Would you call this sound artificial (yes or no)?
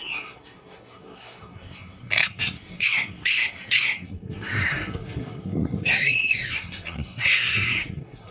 yes